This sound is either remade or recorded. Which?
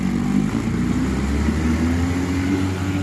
recorded